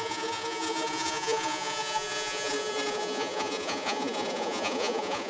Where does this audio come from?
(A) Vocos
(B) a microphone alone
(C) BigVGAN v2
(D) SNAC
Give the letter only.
A